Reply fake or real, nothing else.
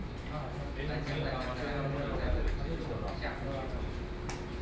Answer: real